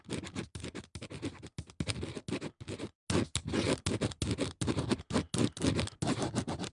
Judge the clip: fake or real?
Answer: real